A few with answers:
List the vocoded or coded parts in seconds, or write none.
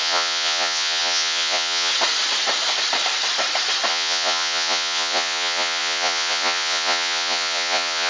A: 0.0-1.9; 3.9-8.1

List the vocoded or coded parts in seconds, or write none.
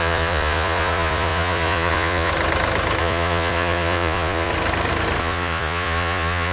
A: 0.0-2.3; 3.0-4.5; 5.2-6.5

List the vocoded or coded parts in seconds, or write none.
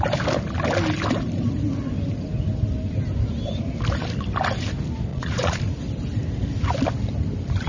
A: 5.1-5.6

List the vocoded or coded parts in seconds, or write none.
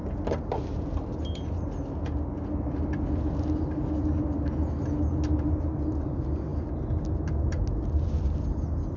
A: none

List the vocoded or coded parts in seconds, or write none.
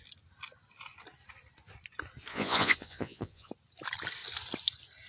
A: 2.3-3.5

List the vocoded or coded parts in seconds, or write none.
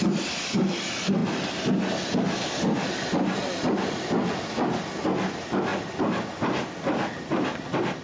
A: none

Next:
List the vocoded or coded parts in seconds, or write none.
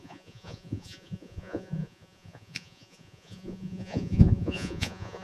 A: 0.0-5.2